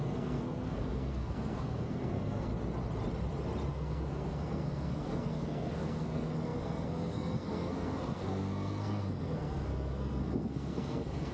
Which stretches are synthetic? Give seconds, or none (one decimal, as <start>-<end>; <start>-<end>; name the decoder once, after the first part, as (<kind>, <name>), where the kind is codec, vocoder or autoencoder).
0.0-2.5 (codec, SNAC); 3.7-11.3